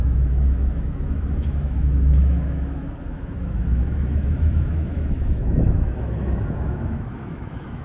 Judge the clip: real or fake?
fake